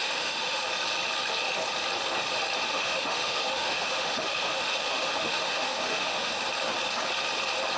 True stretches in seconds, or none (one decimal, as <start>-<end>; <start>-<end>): 0.6-2.7; 6.3-7.8